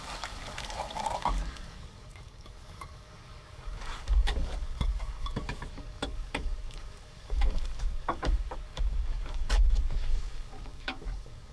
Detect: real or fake fake